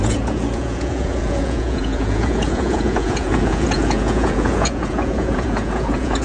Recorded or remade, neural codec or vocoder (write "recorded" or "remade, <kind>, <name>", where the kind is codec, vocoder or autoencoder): remade, vocoder, Vocos